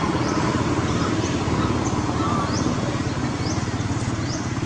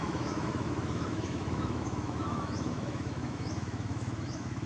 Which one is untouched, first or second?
first